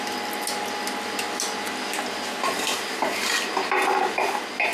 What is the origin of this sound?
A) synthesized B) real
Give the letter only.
B